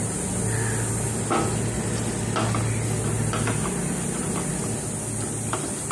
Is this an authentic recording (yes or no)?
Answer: yes